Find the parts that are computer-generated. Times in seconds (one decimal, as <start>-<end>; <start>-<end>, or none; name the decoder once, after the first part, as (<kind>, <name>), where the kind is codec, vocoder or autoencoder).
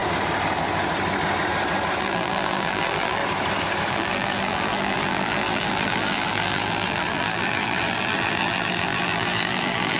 2.0-3.2 (vocoder, BigVGAN v2); 3.9-10.0